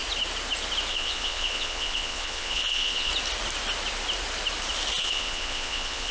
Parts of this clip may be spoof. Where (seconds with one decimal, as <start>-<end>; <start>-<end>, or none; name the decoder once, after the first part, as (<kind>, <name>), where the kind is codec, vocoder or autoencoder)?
0.9-3.1 (vocoder, Vocos); 5.0-6.1